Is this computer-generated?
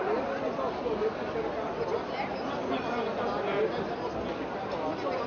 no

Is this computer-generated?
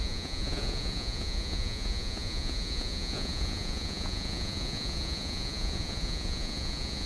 yes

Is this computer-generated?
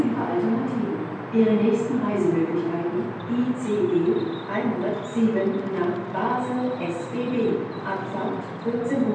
no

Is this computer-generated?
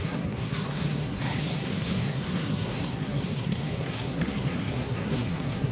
yes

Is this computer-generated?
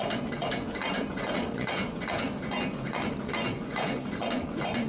yes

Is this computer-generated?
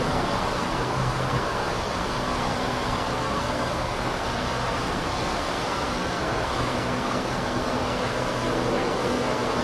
yes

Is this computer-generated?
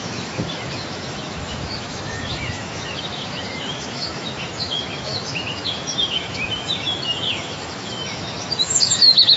yes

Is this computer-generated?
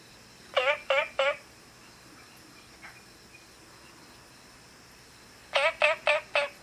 no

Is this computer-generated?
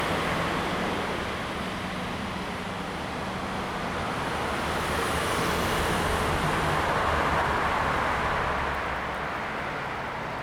no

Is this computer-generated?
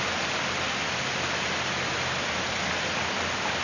no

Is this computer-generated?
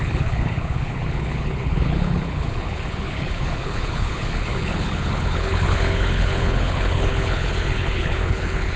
yes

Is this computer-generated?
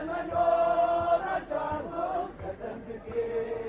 no